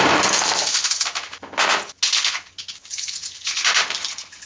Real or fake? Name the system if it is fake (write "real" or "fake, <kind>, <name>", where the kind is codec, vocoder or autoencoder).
real